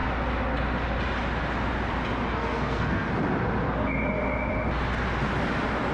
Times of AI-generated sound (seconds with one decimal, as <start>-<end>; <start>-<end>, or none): 2.3-3.1